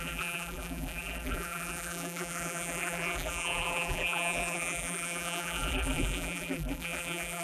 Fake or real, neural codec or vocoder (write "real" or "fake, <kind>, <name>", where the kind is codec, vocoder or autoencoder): fake, vocoder, BigVGAN v2